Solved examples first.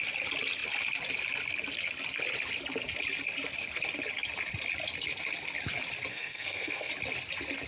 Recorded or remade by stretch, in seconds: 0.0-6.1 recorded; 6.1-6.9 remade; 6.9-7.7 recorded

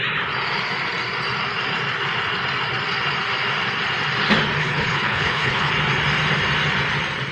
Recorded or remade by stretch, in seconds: 0.0-4.6 recorded; 4.6-5.7 remade; 5.7-7.3 recorded

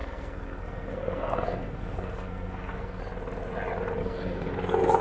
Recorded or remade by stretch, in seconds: 0.0-3.0 remade; 3.0-4.0 recorded; 4.0-4.5 remade; 4.5-5.0 recorded

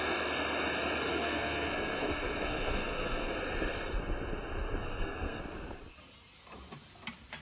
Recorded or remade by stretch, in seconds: 0.0-1.1 recorded; 1.1-3.3 remade; 3.3-4.8 recorded; 4.8-5.4 remade; 5.4-7.4 recorded

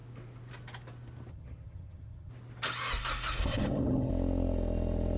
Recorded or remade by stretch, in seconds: 0.0-1.3 recorded; 1.3-2.3 remade; 2.3-3.5 recorded; 3.5-4.1 remade; 4.1-5.2 recorded

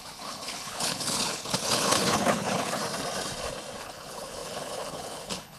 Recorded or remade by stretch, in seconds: 0.0-2.8 remade; 2.8-3.8 recorded; 3.8-5.6 remade